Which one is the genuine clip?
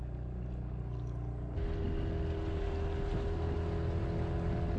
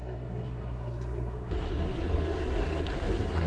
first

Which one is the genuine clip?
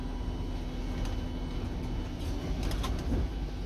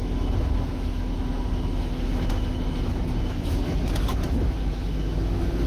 first